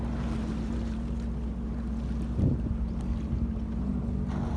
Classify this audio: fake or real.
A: real